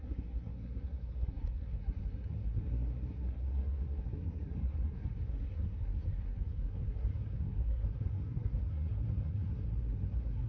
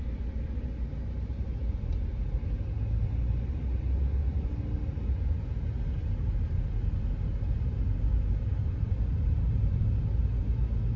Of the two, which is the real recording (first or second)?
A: second